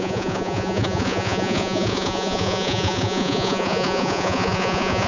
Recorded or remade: remade